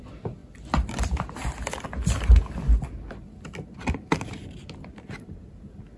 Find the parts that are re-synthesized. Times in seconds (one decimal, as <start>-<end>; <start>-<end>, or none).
none